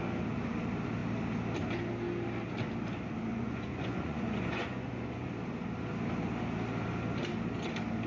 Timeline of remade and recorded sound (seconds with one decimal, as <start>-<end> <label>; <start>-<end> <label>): 0.0-3.3 recorded; 3.3-5.3 remade; 5.3-8.1 recorded